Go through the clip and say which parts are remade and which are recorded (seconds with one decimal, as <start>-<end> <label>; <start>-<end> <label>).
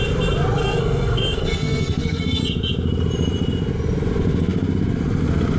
0.0-0.6 recorded; 0.6-2.4 remade; 2.4-5.6 recorded